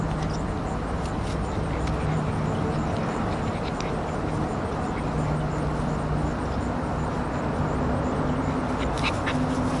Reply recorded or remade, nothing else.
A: recorded